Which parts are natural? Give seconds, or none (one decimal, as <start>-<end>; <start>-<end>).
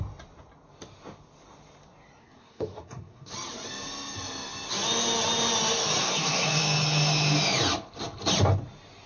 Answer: 0.0-2.2; 3.3-6.0; 6.6-9.1